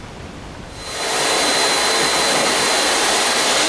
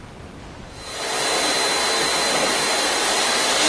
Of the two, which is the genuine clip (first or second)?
second